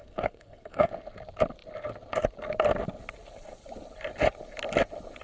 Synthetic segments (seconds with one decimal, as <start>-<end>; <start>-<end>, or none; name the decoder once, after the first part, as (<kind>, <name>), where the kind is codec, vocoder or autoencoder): 0.0-0.9 (codec, SNAC)